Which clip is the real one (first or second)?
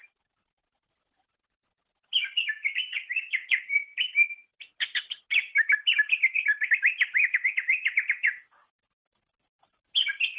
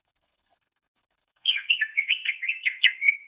first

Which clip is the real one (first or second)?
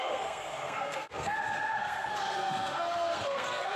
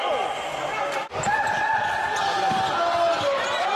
second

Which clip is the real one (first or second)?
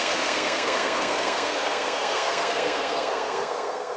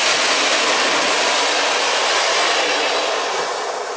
second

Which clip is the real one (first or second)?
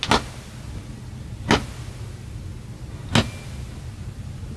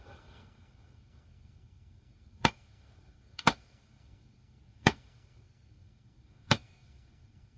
first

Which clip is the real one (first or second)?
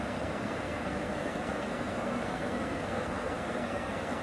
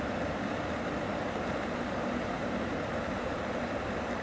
second